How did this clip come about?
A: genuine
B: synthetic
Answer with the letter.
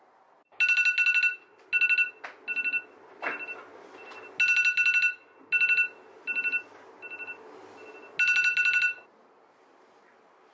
A